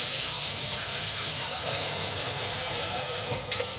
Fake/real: fake